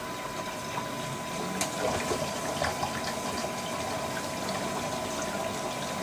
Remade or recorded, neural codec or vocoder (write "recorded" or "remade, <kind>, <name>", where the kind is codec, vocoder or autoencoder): recorded